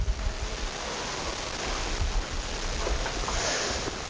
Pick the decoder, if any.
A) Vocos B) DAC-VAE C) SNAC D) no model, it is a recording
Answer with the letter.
D